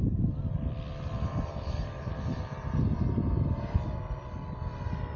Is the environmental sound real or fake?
real